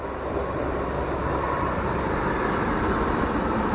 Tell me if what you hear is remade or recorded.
recorded